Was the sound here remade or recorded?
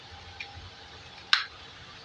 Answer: recorded